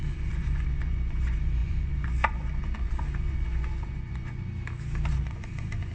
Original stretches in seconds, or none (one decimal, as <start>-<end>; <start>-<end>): 4.5-5.1